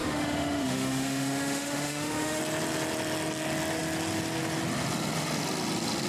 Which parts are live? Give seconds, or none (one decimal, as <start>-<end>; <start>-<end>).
2.4-6.1